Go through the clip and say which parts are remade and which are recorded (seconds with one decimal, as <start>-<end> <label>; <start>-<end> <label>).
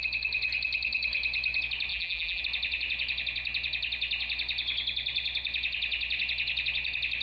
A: 0.0-1.9 recorded; 1.9-2.4 remade; 2.4-7.2 recorded